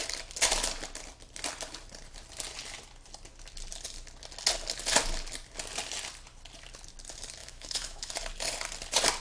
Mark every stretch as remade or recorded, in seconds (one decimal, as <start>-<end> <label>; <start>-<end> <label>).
0.0-7.4 recorded; 7.4-8.1 remade; 8.1-9.2 recorded